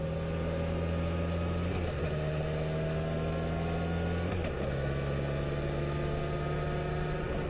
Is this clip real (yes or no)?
yes